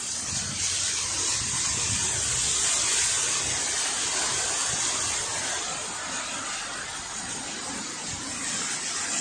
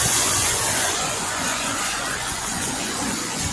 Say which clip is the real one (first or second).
first